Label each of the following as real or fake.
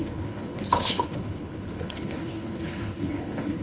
fake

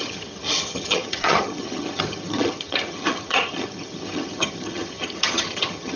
fake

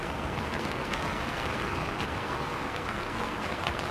fake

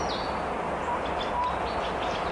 real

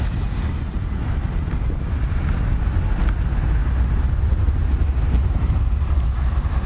real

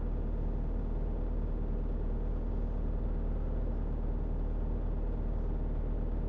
real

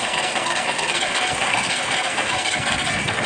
fake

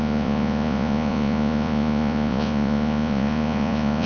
fake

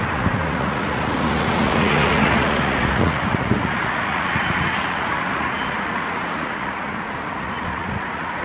fake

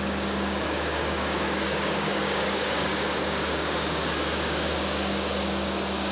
fake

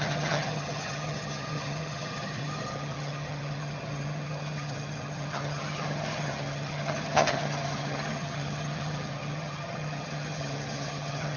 fake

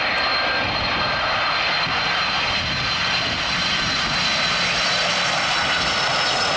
real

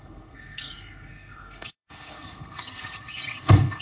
fake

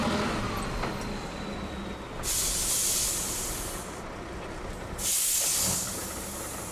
real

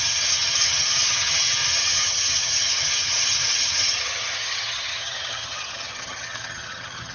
fake